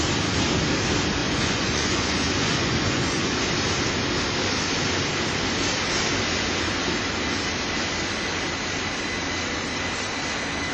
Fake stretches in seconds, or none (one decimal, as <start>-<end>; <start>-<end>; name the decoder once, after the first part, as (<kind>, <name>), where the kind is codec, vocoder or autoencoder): 1.2-3.4 (vocoder, Vocos)